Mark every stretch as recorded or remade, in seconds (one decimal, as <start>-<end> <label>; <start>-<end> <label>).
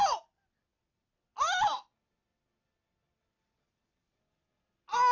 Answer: 0.0-5.1 recorded